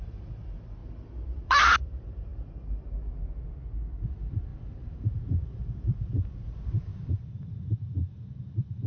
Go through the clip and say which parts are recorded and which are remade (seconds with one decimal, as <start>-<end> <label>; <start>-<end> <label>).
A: 0.0-0.8 remade; 0.8-1.4 recorded; 1.4-2.3 remade; 2.3-4.1 recorded; 4.1-8.9 remade